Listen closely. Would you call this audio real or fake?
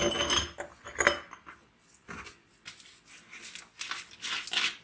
real